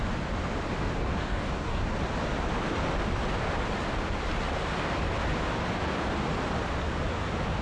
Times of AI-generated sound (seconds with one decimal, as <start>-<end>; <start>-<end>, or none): 1.0-1.8